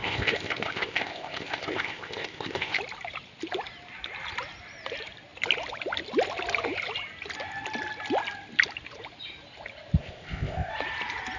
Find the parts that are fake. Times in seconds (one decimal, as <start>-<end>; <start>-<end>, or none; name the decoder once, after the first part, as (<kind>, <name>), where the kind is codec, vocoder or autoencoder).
0.0-2.8 (codec, ZipCodec); 10.0-10.7